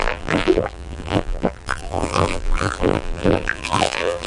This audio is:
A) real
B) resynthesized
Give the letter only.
B